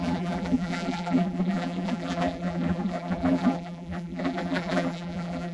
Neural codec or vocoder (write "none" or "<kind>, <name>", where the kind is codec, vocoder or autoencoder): vocoder, BigVGAN v2